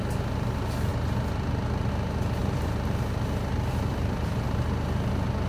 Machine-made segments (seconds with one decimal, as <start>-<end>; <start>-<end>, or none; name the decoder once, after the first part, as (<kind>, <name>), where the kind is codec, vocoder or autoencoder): 2.4-4.6 (vocoder, BigVGAN v2)